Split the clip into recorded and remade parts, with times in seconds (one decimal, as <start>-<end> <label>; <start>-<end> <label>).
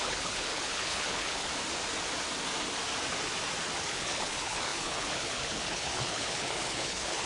0.0-1.5 remade; 1.5-3.8 recorded; 3.8-7.3 remade